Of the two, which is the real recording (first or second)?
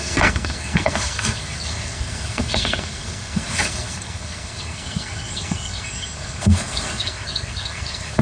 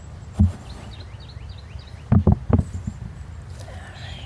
second